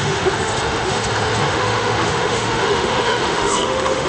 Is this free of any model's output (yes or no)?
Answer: no